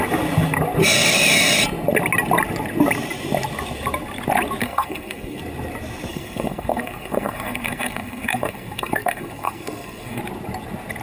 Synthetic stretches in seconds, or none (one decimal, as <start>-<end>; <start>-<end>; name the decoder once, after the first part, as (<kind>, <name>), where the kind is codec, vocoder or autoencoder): 4.6-5.4 (codec, SNAC); 6.1-10.2